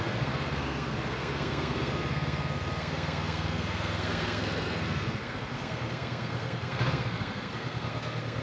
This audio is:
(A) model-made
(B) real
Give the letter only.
A